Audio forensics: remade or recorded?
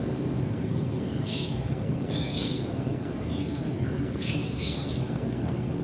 remade